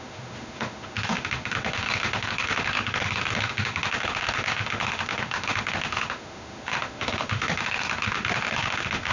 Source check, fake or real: fake